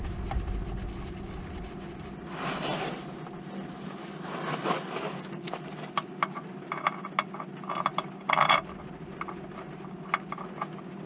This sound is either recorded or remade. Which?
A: recorded